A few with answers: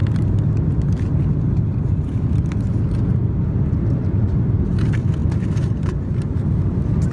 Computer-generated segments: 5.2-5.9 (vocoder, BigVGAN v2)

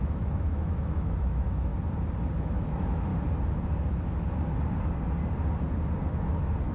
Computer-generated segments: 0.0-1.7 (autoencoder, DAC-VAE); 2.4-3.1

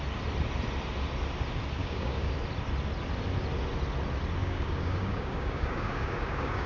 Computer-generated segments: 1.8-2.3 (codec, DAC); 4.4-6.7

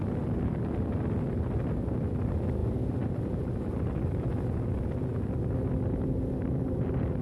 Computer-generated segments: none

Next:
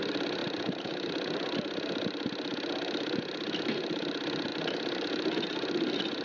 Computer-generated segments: none

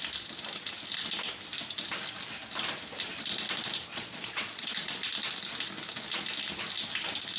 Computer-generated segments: 3.9-4.7 (vocoder, Vocos)